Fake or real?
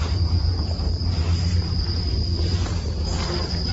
fake